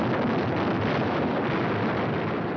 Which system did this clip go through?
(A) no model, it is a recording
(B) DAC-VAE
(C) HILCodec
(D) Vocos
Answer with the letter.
A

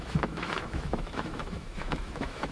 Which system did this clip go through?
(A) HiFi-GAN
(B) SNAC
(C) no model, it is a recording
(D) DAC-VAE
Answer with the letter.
D